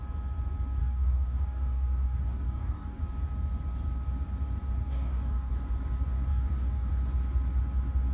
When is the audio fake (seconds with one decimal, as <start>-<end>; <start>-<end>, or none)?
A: 0.8-3.0; 4.8-5.5; 6.3-6.9